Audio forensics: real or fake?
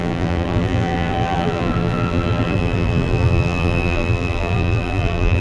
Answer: fake